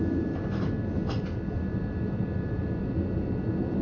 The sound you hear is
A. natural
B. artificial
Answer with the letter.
A